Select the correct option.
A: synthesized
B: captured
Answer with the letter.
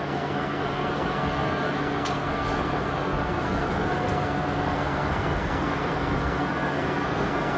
A